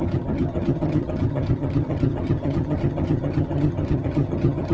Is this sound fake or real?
fake